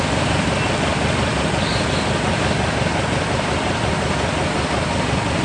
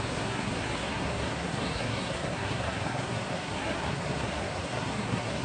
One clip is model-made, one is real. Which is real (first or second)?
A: first